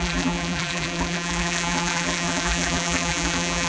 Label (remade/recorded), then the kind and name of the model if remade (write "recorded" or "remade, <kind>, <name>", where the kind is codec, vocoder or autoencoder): remade, vocoder, BigVGAN v2